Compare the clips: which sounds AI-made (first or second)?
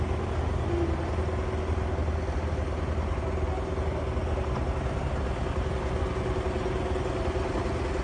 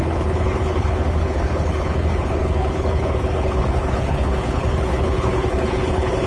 second